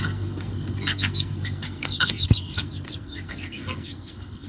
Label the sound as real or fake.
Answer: fake